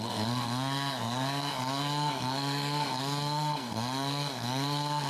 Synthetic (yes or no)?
yes